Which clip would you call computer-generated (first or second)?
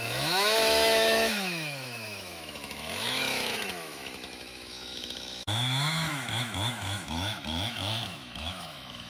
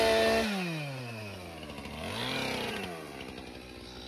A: first